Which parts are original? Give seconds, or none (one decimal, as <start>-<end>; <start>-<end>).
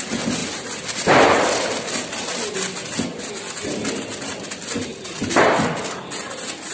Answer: 0.0-6.7